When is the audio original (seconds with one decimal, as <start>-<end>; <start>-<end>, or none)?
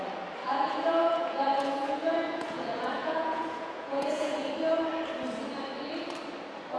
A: 0.0-0.4; 4.5-6.8